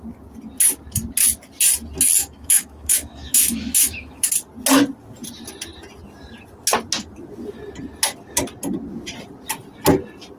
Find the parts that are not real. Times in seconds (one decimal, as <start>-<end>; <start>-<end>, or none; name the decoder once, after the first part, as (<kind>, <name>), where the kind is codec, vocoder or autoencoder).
2.2-4.3 (autoencoder, DAC-VAE)